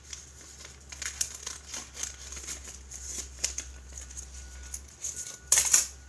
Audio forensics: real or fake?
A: fake